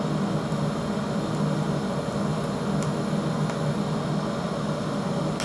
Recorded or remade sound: recorded